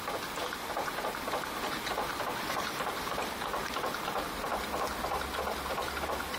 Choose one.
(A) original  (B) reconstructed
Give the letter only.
A